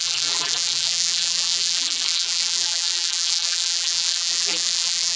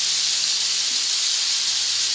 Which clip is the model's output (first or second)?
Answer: first